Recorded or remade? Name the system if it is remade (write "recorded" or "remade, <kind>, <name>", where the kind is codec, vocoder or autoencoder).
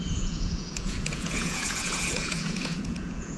remade, vocoder, Vocos